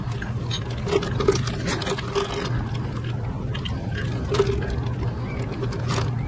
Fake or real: real